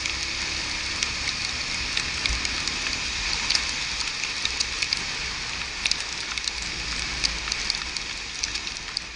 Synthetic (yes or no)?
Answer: no